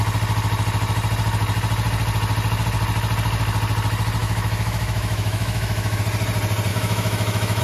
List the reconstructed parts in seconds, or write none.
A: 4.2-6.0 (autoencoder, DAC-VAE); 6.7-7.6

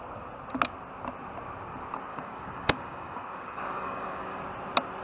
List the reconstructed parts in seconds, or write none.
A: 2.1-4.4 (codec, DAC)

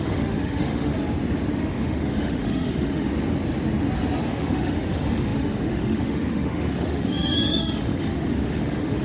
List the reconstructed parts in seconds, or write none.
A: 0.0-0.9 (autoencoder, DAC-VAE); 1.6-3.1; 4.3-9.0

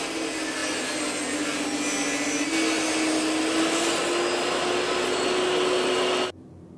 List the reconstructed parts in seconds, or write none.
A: none